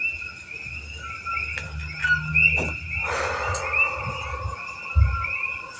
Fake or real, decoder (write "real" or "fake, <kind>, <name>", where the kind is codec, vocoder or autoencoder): real